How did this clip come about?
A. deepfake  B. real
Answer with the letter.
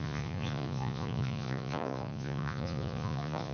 A